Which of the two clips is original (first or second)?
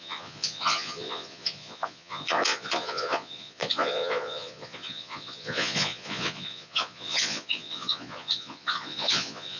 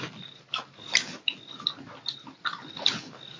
second